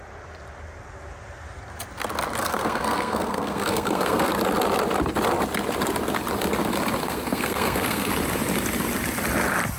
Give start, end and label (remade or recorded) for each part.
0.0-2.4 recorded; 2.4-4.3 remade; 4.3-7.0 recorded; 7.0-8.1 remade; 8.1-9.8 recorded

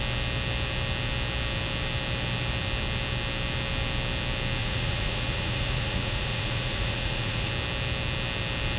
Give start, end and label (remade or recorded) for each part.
0.0-4.6 recorded; 4.6-7.5 remade; 7.5-8.8 recorded